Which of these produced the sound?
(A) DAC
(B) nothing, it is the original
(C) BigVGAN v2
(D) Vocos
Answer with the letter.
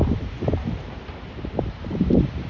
C